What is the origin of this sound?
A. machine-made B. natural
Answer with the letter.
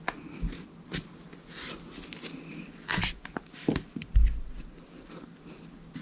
B